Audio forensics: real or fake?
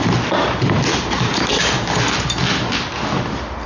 real